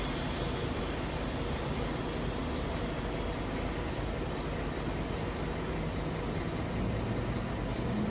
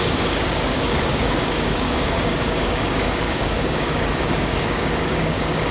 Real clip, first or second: first